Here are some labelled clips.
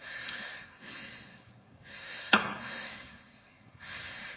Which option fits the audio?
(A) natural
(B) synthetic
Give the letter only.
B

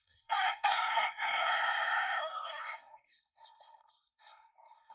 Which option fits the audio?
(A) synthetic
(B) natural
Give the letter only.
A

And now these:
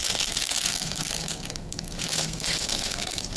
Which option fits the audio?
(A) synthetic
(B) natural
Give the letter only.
A